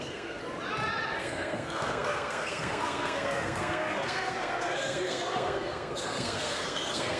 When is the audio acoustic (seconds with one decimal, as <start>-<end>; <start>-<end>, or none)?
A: 0.4-1.2